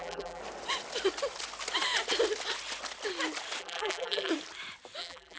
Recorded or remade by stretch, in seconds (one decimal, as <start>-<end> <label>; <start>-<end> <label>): 0.0-0.4 remade; 0.4-3.6 recorded; 3.6-4.3 remade; 4.3-5.0 recorded; 5.0-5.4 remade